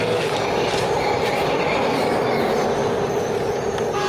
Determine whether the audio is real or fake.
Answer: real